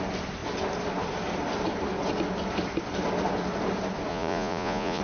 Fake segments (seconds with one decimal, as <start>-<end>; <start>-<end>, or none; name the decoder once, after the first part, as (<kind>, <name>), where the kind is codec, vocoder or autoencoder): 4.1-5.0 (vocoder, Vocos)